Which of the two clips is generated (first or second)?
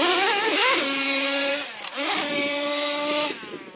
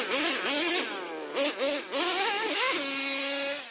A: first